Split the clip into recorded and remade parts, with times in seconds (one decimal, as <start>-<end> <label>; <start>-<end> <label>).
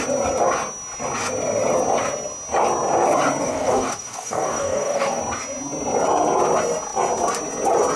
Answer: 0.0-3.4 recorded; 3.4-5.2 remade; 5.2-8.0 recorded